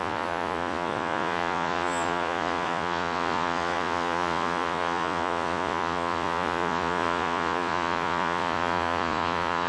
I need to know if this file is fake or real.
fake